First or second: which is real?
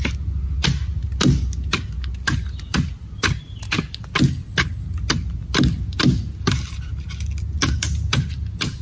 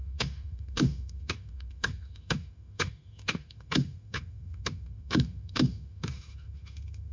first